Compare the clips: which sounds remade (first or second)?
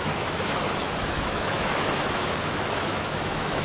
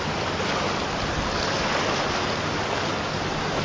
first